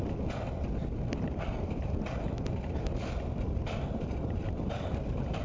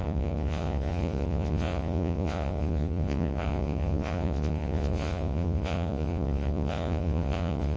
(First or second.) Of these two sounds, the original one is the first